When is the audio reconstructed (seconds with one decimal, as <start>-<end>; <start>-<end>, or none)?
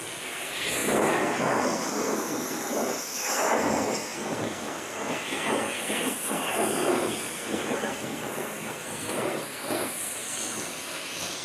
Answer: 0.0-11.4